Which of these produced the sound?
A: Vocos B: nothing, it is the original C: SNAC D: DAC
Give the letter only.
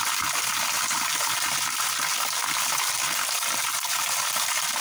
B